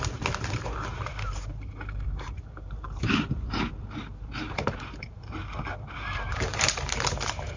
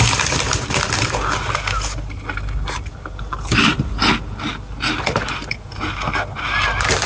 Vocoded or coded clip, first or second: first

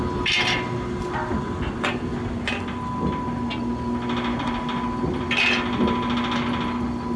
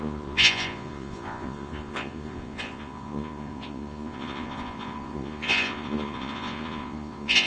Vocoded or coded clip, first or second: second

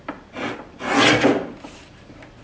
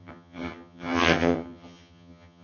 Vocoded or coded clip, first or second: second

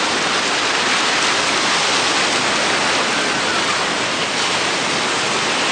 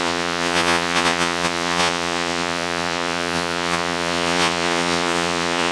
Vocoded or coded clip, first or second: second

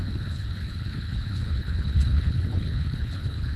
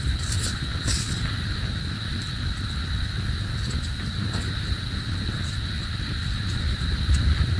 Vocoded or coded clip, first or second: first